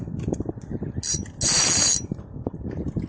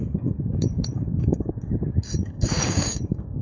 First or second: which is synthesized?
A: second